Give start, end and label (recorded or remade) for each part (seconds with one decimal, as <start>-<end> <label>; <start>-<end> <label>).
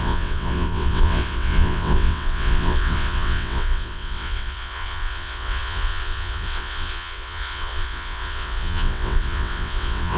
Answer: 0.0-10.2 remade